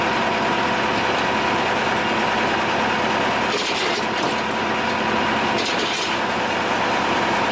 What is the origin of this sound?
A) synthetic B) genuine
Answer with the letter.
B